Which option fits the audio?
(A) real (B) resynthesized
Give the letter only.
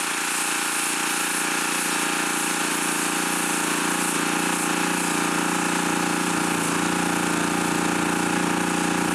A